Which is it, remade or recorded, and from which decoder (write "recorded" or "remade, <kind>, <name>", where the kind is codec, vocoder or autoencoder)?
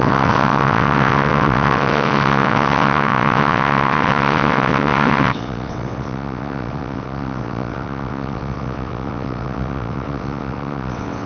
remade, vocoder, WaveNeXt